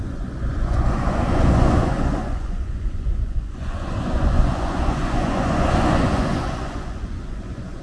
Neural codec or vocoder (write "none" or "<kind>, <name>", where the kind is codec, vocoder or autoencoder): vocoder, Vocos